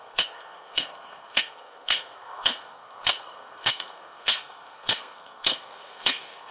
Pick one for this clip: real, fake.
fake